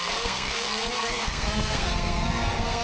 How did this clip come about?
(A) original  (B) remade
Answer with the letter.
B